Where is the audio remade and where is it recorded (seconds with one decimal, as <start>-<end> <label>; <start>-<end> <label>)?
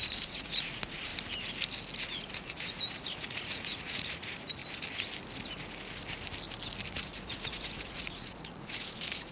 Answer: 0.0-1.1 remade; 1.1-2.3 recorded; 2.3-4.6 remade; 4.6-7.0 recorded; 7.0-9.3 remade